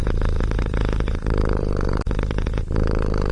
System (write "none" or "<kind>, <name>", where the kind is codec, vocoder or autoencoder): vocoder, BigVGAN v2